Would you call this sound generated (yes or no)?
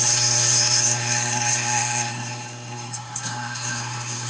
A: yes